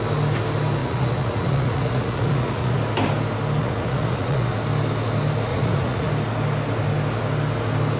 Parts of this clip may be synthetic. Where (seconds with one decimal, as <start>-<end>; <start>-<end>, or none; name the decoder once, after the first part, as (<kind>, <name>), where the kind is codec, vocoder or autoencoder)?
0.8-2.8 (vocoder, Vocos); 3.6-4.5; 5.5-6.1